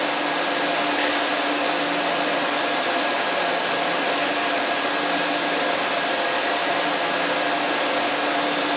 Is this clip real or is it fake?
real